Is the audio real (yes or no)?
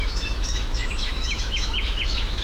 no